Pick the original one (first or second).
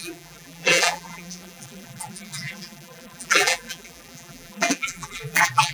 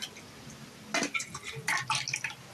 second